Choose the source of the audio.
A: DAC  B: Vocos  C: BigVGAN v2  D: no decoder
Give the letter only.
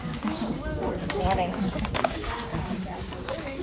A